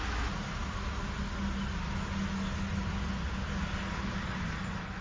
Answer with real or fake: real